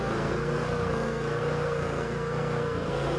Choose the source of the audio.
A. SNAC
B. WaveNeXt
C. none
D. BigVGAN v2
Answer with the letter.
A